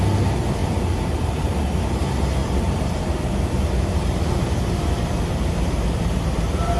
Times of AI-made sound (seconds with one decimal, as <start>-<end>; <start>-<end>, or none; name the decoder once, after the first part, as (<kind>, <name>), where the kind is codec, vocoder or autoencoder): 0.6-1.3 (vocoder, BigVGAN v2); 2.4-4.2